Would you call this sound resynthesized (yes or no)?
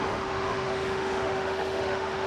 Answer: yes